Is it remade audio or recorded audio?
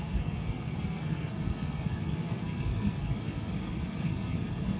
remade